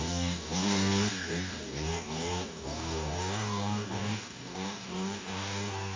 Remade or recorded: remade